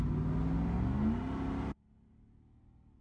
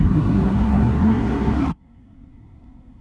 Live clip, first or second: first